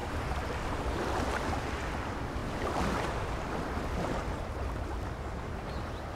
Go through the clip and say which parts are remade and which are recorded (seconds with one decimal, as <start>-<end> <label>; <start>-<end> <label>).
0.0-6.2 recorded